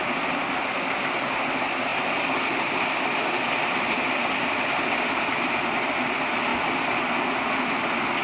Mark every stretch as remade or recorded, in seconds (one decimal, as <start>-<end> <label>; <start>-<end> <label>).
0.0-8.2 recorded